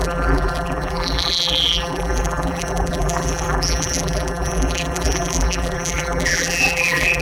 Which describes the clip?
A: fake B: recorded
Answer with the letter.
A